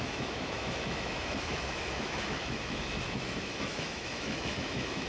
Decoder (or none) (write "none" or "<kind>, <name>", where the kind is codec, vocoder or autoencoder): autoencoder, DAC-VAE